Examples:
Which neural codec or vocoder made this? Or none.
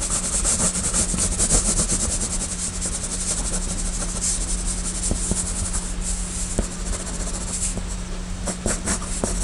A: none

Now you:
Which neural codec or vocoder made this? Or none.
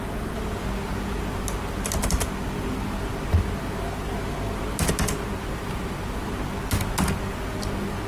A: none